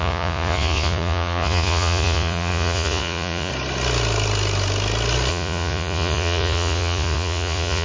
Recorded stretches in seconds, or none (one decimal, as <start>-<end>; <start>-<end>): 3.5-5.3

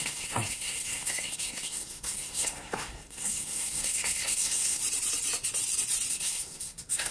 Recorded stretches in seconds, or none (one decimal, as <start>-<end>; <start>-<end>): 4.8-6.1

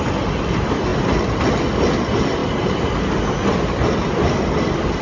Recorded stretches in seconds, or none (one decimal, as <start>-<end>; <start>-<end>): 0.0-5.0

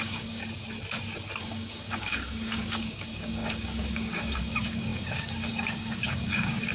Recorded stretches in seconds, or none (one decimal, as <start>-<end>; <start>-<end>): 0.4-1.4

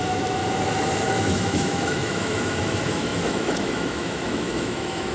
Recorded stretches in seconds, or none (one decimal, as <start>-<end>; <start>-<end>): 0.4-1.1

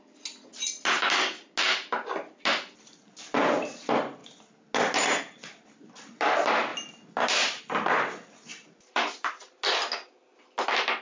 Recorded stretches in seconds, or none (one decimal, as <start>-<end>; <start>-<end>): 0.0-6.7; 7.6-8.5; 9.4-11.0

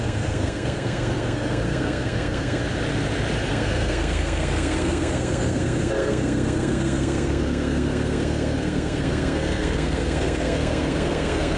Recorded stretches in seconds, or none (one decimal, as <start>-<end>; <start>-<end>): 2.6-3.5